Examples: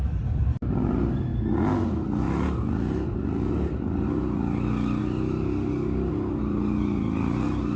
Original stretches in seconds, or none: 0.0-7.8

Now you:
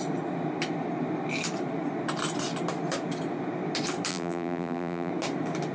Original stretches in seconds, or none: 0.0-4.1; 5.1-5.7

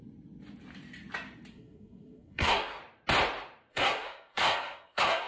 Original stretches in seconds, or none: 0.0-1.5; 2.8-3.7

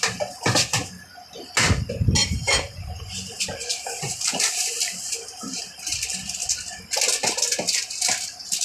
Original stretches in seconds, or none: 0.0-2.2; 5.6-8.6